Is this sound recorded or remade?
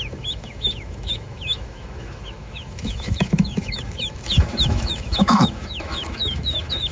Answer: remade